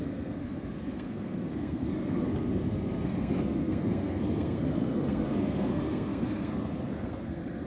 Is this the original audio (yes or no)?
no